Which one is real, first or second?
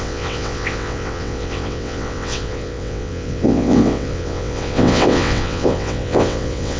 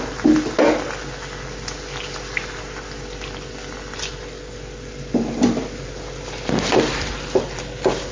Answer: second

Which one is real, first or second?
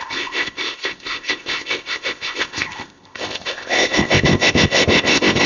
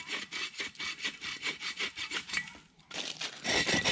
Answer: second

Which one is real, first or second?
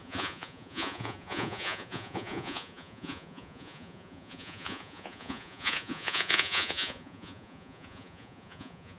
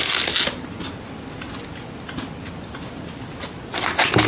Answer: second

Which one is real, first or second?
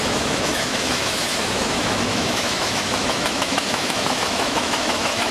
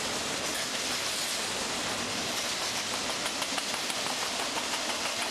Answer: second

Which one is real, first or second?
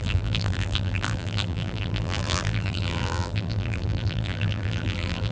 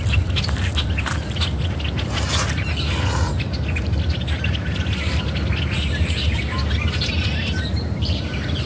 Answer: second